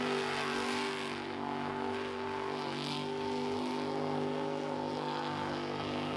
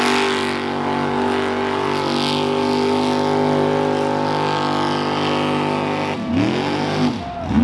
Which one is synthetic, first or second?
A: first